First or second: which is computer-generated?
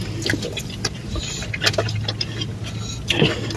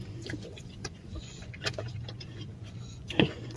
second